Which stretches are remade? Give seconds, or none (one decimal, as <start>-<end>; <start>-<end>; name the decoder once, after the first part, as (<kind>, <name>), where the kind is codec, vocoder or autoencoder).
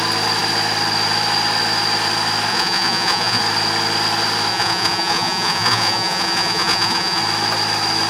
2.5-3.4 (vocoder, Vocos); 4.5-7.2